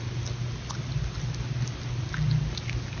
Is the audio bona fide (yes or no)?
yes